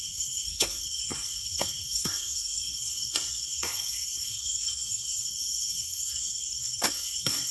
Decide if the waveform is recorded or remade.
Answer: remade